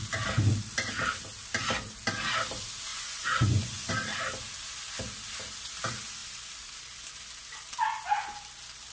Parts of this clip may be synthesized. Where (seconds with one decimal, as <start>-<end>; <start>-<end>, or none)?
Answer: 2.9-3.9